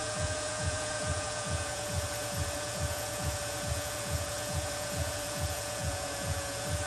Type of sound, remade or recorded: remade